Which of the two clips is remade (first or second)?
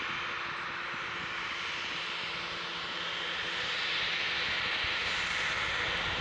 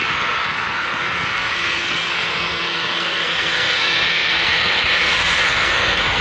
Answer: second